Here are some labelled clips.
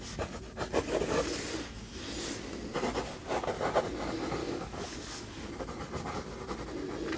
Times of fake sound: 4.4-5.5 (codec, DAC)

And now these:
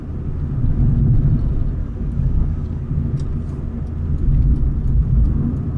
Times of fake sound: 1.8-2.8 (codec, DAC)

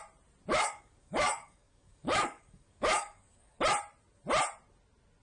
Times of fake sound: 0.5-3.6 (codec, DAC)

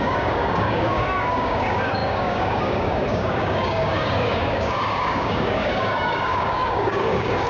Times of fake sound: 0.0-7.5 (codec, DAC)